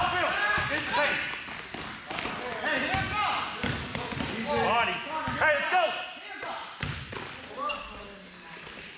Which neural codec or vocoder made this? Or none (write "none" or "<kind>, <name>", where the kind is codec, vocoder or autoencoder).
none